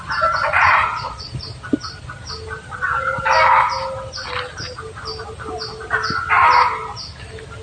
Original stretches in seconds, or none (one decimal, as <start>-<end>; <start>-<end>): 0.0-0.5; 1.3-7.6